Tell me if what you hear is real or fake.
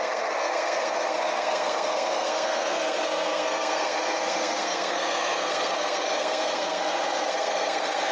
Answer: fake